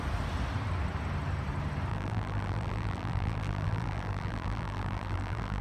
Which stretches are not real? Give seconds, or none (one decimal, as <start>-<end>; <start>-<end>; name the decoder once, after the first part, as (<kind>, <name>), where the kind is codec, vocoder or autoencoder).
1.9-5.6 (vocoder, BigVGAN v2)